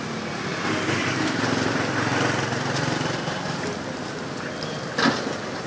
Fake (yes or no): no